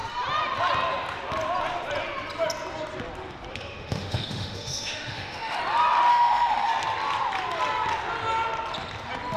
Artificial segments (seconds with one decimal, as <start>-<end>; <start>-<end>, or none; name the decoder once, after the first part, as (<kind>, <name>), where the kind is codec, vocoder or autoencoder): 3.5-5.6 (autoencoder, DAC-VAE); 6.1-6.7